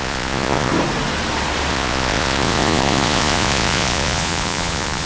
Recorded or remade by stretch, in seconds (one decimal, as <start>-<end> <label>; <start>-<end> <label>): 0.0-0.7 remade; 0.7-1.7 recorded; 1.7-5.1 remade